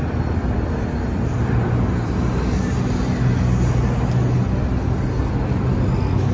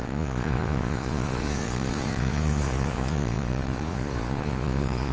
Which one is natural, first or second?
first